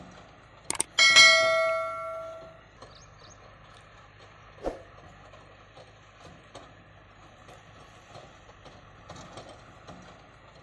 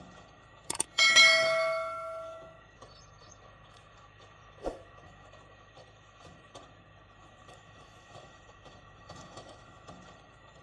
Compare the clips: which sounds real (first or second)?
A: first